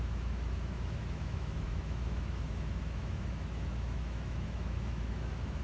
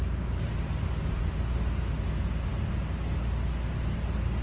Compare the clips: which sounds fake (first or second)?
first